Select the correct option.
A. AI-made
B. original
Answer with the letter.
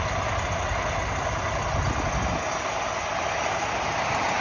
B